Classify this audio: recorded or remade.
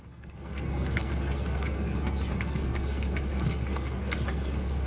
remade